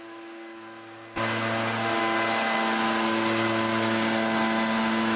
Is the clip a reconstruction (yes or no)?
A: no